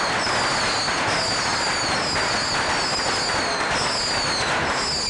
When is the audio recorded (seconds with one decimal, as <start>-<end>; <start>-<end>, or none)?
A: 0.0-5.1